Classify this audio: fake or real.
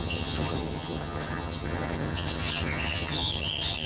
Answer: fake